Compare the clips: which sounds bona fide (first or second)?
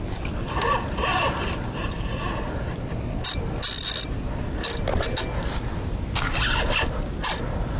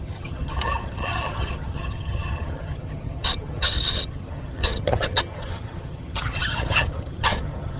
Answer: first